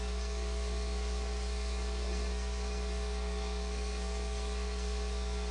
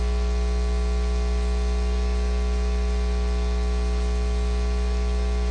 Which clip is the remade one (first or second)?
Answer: first